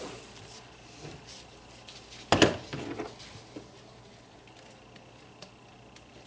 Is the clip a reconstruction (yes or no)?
no